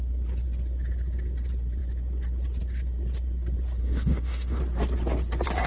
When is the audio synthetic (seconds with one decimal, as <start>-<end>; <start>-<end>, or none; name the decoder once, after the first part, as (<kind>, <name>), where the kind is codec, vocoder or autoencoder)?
3.8-4.6 (autoencoder, DAC-VAE)